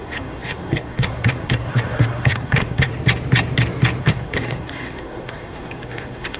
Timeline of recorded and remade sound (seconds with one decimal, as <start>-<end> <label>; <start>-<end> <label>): 0.0-2.9 remade; 2.9-4.0 recorded; 4.0-6.4 remade